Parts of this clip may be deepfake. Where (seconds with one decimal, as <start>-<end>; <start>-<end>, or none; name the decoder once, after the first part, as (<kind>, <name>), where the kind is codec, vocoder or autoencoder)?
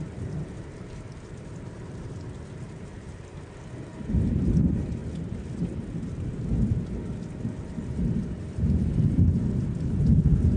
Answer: 0.0-5.0 (vocoder, BigVGAN v2); 7.4-10.6